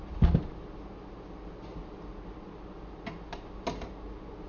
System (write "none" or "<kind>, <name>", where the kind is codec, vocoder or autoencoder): none